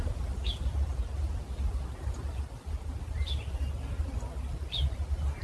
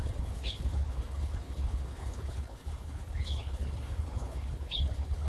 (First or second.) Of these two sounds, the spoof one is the second